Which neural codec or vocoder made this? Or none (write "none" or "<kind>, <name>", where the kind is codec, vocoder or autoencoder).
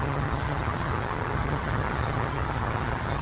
vocoder, HiFi-GAN